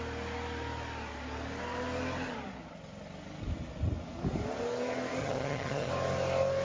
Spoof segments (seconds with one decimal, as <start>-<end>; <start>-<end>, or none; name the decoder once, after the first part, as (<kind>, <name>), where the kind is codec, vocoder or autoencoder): 5.2-5.9 (vocoder, HiFi-GAN)